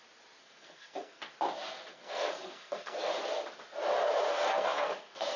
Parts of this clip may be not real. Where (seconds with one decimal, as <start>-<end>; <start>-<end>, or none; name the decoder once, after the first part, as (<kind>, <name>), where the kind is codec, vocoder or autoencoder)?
0.4-1.3 (codec, SNAC); 1.9-3.1; 4.5-5.4